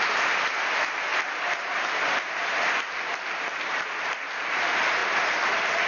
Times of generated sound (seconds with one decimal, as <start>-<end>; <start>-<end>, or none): 0.0-1.1; 4.6-5.0